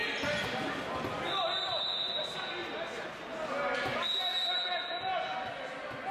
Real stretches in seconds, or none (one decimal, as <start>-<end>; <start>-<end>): 0.0-2.6; 3.1-6.1